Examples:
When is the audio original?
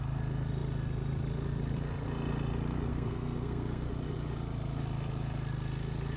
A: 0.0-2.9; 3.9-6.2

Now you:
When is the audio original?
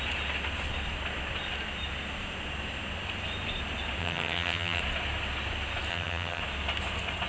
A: 0.0-4.0; 4.8-5.9; 6.4-7.3